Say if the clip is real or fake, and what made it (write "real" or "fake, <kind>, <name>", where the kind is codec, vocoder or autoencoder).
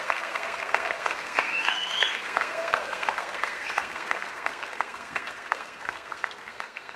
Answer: fake, codec, SNAC